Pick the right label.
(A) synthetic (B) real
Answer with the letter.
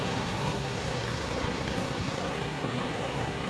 A